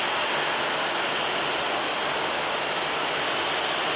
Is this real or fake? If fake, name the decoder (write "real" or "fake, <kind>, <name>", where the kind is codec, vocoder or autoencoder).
real